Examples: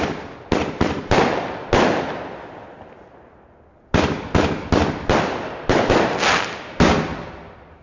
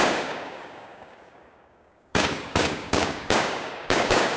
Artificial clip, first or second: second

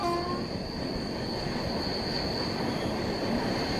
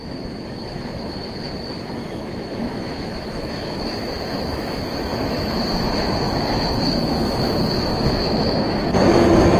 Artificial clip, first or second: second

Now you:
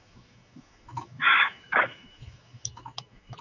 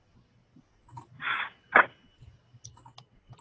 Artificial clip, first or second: first